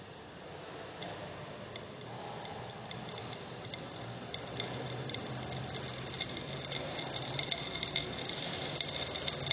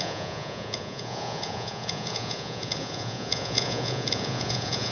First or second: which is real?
first